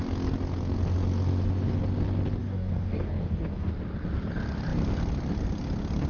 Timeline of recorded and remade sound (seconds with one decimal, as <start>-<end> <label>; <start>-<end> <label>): 0.0-2.4 recorded; 2.4-3.7 remade; 3.7-6.1 recorded